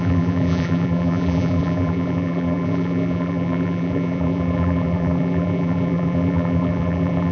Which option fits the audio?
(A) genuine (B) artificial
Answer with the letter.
B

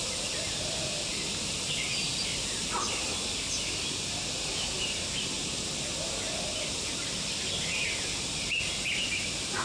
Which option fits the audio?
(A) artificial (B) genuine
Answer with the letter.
B